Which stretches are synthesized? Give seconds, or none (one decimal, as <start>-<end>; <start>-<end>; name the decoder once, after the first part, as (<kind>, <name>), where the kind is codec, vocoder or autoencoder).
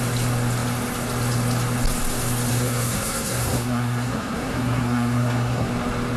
2.5-5.7 (codec, SNAC)